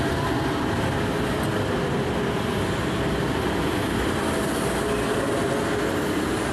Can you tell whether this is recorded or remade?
recorded